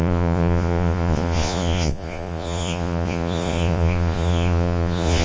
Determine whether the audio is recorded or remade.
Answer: remade